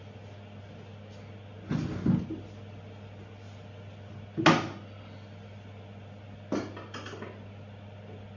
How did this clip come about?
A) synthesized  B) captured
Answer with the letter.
B